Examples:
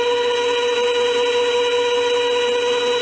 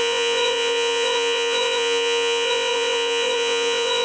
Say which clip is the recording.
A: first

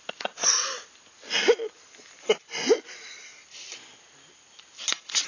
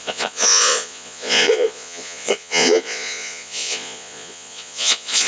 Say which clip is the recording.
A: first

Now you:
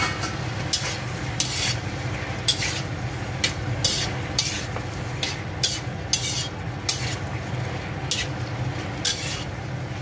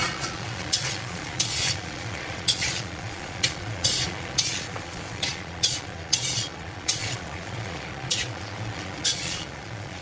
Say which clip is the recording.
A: first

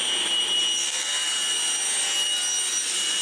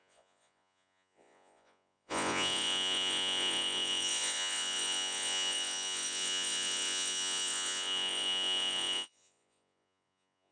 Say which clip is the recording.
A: first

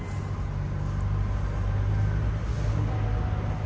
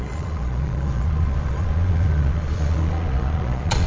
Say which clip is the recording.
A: first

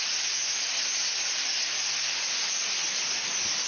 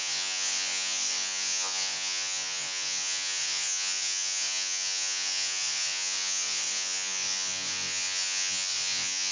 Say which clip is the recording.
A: first